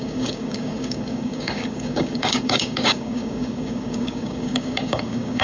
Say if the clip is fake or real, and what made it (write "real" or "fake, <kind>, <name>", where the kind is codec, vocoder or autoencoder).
fake, codec, DAC